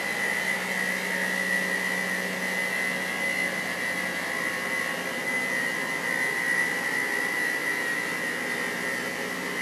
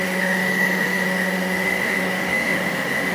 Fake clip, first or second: second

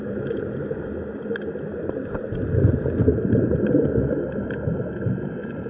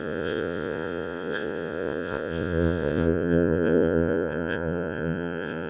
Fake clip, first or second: second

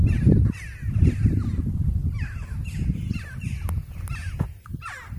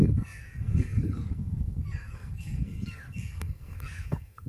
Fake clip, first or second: second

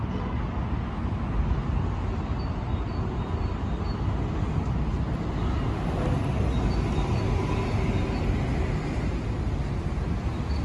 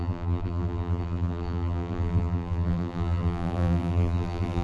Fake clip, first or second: second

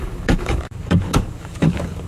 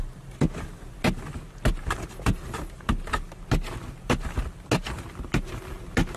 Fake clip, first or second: first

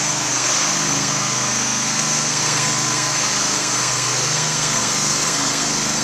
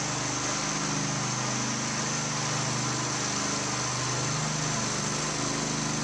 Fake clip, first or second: first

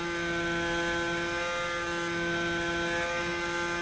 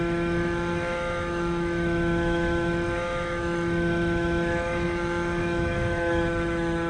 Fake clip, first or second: second